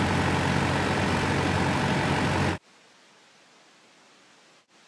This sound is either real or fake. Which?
real